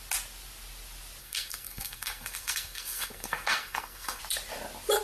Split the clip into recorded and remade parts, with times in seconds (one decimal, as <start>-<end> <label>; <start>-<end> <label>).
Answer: 0.0-1.2 recorded; 1.2-4.2 remade; 4.2-5.0 recorded

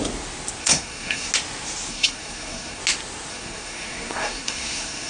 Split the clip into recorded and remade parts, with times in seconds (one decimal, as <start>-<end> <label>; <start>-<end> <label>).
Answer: 0.0-0.6 recorded; 0.6-1.3 remade; 1.3-1.9 recorded; 1.9-2.8 remade; 2.8-3.3 recorded; 3.3-5.1 remade

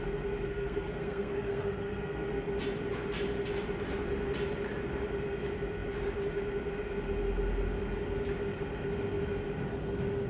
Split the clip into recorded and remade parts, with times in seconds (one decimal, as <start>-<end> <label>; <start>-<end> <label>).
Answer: 0.0-0.5 recorded; 0.5-2.3 remade; 2.3-10.3 recorded